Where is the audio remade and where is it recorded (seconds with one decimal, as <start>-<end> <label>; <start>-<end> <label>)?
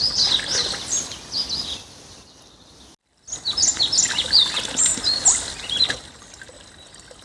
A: 0.0-7.2 recorded